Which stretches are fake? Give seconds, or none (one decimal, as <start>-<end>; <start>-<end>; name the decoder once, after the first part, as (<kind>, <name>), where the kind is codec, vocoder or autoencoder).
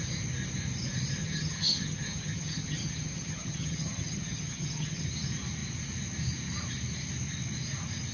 1.2-5.1 (vocoder, HiFi-GAN)